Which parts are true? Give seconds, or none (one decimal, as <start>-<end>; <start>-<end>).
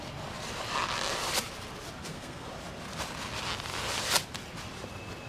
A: 0.0-2.0; 2.5-5.3